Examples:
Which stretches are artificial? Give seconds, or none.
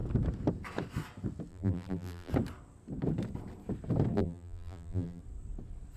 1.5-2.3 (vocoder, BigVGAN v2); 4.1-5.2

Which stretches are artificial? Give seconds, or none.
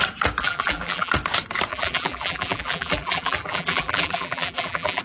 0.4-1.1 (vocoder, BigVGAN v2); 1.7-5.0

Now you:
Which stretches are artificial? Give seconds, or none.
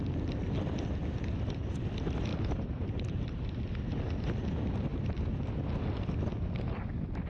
2.3-3.7 (vocoder, BigVGAN v2); 4.9-5.7